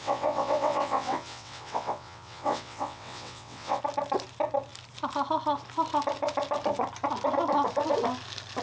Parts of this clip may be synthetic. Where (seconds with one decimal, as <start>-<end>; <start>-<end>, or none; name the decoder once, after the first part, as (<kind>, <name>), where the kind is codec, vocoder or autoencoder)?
0.0-3.8 (vocoder, WaveNeXt)